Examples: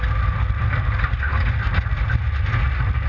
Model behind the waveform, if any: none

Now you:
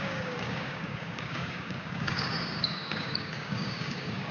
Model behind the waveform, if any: codec, DAC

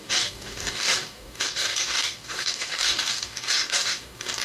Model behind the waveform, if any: codec, DAC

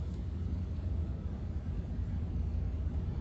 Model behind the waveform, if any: codec, DAC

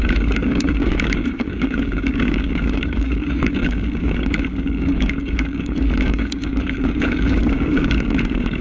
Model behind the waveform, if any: codec, DAC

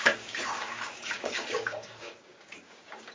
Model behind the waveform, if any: codec, DAC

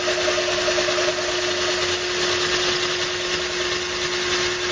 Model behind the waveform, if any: none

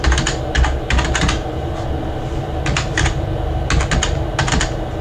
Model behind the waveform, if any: none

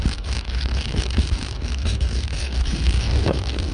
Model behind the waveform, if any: codec, DAC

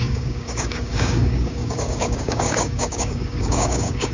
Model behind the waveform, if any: codec, DAC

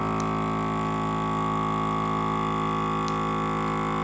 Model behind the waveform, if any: none